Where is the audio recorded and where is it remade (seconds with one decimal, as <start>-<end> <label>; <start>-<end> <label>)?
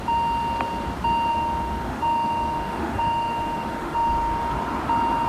0.0-1.3 recorded; 1.3-4.5 remade; 4.5-5.3 recorded